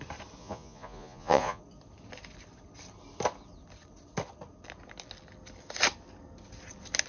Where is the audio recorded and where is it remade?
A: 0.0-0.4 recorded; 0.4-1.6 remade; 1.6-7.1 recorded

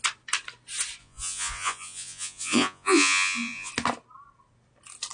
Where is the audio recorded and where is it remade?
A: 0.0-1.0 recorded; 1.0-3.7 remade; 3.7-5.1 recorded

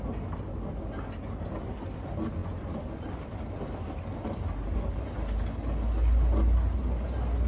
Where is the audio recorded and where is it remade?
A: 0.0-7.5 recorded

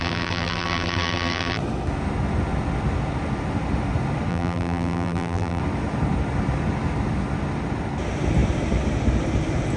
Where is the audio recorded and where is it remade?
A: 0.0-1.6 remade; 1.6-4.3 recorded; 4.3-5.6 remade; 5.6-9.8 recorded

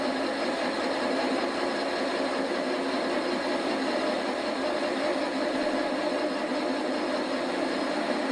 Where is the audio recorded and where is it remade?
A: 0.0-8.3 recorded